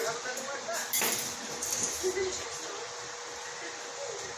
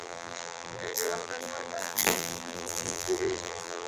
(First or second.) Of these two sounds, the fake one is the second